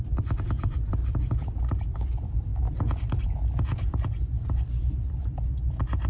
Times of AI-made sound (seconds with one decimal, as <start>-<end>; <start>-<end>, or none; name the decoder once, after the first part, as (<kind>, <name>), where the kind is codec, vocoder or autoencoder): 0.0-1.0 (vocoder, BigVGAN v2); 2.1-2.5; 4.5-6.1